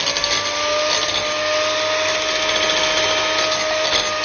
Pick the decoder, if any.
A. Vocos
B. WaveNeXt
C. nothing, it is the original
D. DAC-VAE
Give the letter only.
C